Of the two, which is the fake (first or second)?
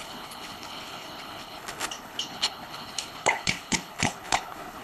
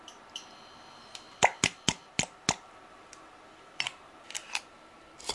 first